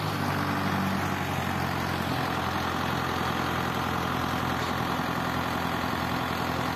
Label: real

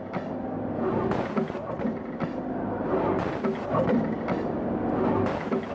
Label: real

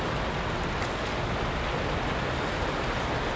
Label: real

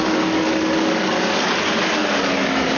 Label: fake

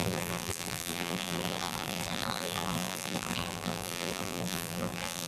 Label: fake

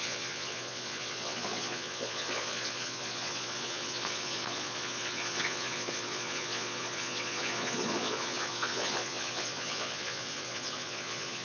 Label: fake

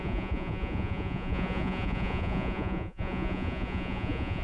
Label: fake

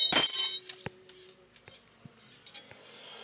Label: real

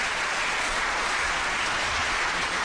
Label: fake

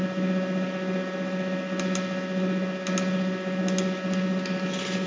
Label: real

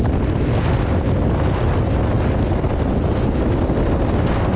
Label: real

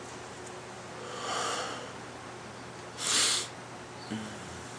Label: real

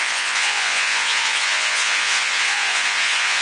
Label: fake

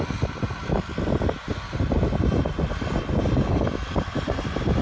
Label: real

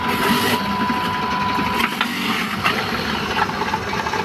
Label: real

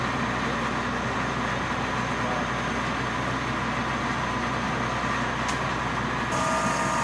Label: real